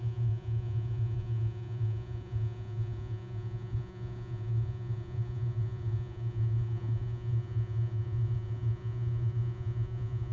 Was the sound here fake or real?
fake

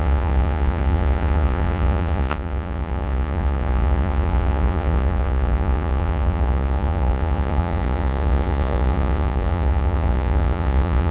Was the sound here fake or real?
fake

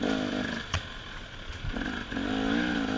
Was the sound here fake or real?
real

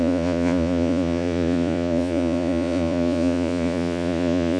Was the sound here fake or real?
fake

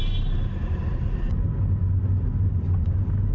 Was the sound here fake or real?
real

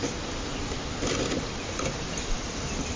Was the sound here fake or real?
real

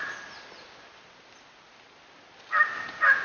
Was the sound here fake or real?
real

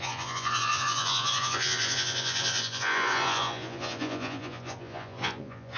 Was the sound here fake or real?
fake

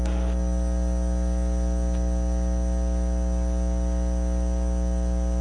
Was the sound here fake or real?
real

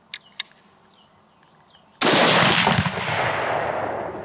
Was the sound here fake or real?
real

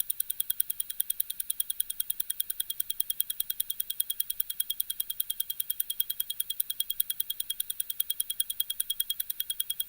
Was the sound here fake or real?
real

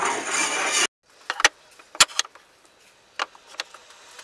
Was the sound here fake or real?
real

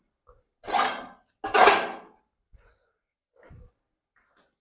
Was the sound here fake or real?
real